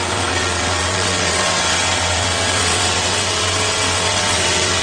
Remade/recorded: remade